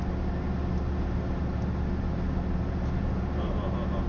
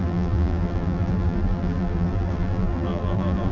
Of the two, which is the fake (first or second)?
second